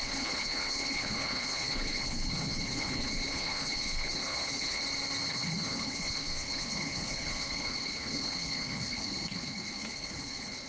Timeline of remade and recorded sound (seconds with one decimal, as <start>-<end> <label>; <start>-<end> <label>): 0.0-4.8 remade; 4.8-5.3 recorded; 5.3-10.7 remade